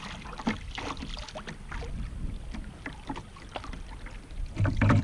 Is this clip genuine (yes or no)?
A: yes